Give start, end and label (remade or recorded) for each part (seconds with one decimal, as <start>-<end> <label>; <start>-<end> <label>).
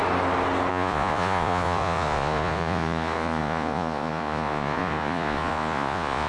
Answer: 0.0-0.7 recorded; 0.7-6.3 remade